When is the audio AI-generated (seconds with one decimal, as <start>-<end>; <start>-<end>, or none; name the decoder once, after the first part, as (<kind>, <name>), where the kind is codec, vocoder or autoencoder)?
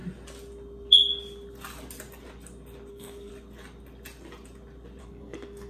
2.9-3.3 (codec, SNAC); 5.0-5.7